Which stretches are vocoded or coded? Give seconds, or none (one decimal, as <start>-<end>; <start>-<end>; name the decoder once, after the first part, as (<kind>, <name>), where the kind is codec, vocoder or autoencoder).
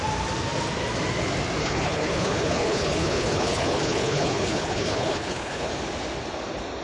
1.6-5.7 (codec, HILCodec)